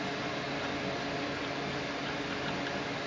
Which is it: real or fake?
real